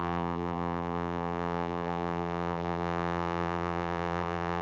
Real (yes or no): no